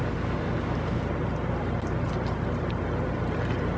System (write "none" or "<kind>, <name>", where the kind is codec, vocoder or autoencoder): none